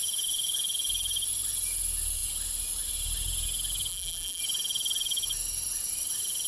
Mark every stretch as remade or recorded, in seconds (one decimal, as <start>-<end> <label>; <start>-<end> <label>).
0.0-3.9 recorded; 3.9-4.4 remade; 4.4-6.5 recorded